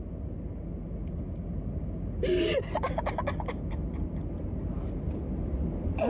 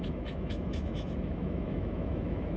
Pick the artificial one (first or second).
second